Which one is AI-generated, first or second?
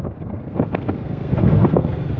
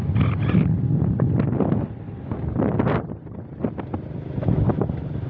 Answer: first